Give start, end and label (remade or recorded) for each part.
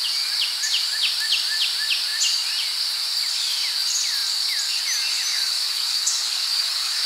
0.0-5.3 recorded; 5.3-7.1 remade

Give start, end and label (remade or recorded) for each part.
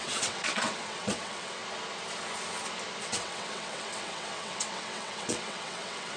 0.0-1.6 remade; 1.6-3.0 recorded; 3.0-6.2 remade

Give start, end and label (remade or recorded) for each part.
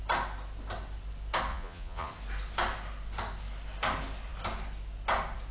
0.0-1.5 recorded; 1.5-2.1 remade; 2.1-5.5 recorded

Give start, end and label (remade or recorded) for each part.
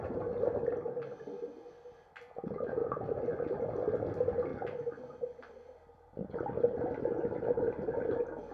0.0-8.5 recorded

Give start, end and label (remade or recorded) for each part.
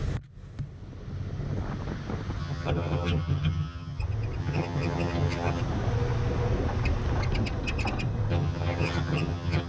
0.0-2.4 recorded; 2.4-4.0 remade; 4.0-4.4 recorded; 4.4-5.6 remade; 5.6-8.3 recorded; 8.3-9.7 remade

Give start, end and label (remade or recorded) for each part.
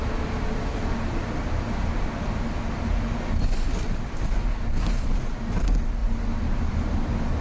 0.0-7.4 recorded